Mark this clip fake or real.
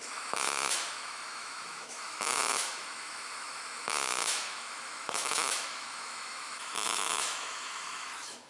fake